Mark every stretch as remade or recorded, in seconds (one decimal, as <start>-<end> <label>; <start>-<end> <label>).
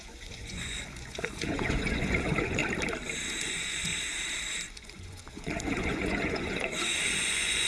0.0-2.6 remade; 2.6-3.4 recorded; 3.4-3.9 remade; 3.9-4.7 recorded; 4.7-7.7 remade